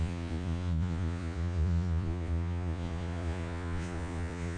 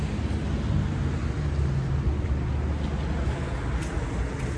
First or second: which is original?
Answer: second